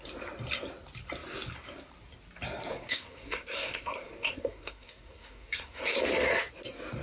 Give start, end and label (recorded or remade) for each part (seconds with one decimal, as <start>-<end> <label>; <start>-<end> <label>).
0.0-2.7 recorded; 2.7-6.0 remade; 6.0-7.0 recorded